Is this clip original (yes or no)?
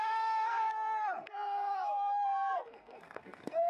no